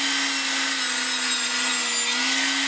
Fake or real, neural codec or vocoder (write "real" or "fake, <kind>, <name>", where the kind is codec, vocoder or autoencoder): real